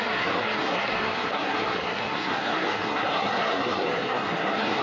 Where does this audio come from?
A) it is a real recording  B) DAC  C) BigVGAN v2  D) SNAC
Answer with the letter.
D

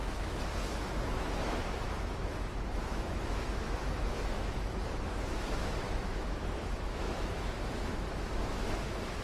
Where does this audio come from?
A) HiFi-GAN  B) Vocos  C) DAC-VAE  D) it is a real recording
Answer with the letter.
C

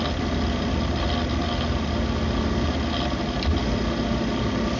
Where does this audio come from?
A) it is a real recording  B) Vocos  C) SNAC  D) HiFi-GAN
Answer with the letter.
A